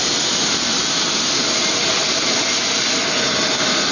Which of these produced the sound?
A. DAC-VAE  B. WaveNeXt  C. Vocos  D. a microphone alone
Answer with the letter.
D